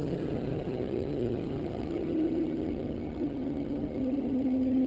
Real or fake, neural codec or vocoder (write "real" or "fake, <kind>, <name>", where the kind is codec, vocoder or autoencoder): fake, vocoder, HiFi-GAN